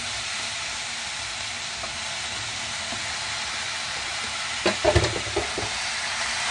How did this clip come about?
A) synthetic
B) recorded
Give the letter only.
B